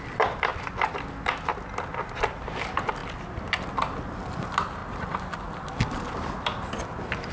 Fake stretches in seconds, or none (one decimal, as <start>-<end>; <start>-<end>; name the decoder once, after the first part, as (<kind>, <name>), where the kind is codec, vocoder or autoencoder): 0.0-0.5 (vocoder, BigVGAN v2); 2.1-3.0; 4.3-7.3